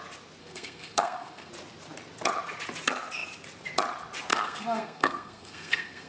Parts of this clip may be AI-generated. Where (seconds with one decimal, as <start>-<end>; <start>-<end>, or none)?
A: 0.4-1.5; 4.3-6.1